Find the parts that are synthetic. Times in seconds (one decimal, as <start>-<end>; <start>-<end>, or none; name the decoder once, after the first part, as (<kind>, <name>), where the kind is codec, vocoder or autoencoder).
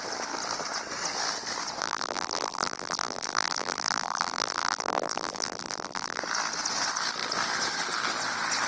1.8-6.2 (vocoder, BigVGAN v2)